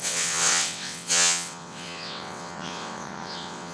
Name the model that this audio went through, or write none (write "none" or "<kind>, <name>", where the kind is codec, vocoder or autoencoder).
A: vocoder, WaveNeXt